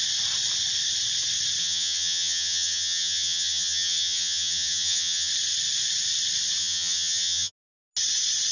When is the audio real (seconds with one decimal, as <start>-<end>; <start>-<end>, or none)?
0.0-1.6; 5.3-6.6; 7.5-8.5